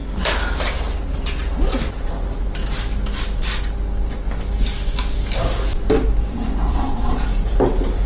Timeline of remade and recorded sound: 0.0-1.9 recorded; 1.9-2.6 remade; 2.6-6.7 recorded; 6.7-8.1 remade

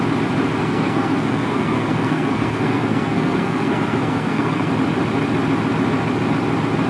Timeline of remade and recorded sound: 0.0-0.6 recorded; 0.6-4.7 remade; 4.7-6.9 recorded

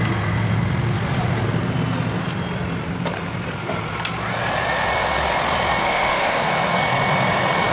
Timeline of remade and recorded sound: 0.0-5.8 recorded; 5.8-6.5 remade; 6.5-7.7 recorded

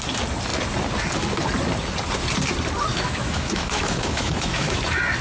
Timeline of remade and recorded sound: 0.0-2.9 recorded; 2.9-4.8 remade; 4.8-5.2 recorded

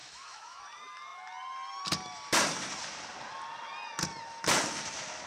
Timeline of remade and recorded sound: 0.0-0.6 remade; 0.6-5.3 recorded